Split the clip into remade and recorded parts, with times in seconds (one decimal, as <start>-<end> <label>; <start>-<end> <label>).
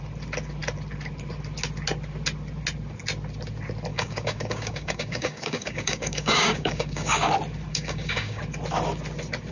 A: 0.0-3.9 recorded; 3.9-7.3 remade; 7.3-7.7 recorded; 7.7-8.4 remade; 8.4-9.5 recorded